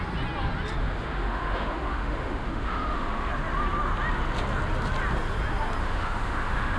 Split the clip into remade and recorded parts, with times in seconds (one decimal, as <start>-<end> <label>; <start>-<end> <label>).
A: 0.0-0.8 recorded; 0.8-3.3 remade; 3.3-5.8 recorded; 5.8-6.8 remade